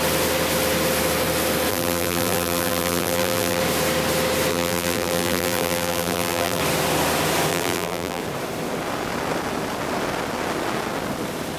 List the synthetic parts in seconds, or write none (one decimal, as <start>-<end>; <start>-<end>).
1.7-3.6; 4.5-6.6; 7.5-8.2